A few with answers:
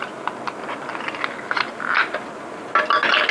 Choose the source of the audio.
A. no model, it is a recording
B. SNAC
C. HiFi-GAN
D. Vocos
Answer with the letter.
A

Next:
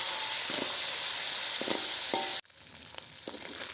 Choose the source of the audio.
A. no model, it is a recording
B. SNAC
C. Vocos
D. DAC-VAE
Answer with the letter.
A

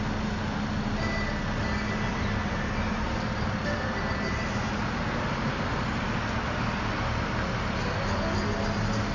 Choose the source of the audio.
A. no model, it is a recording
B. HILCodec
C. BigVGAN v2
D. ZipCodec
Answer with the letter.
A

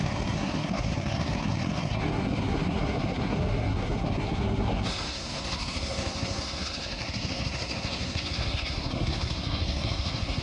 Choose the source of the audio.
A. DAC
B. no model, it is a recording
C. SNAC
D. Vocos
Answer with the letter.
C